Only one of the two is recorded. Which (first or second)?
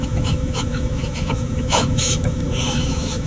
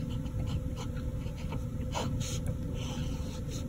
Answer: second